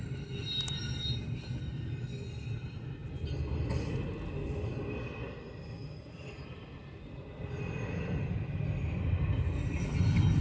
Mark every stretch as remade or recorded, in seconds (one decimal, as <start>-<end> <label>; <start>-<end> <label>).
0.0-10.4 recorded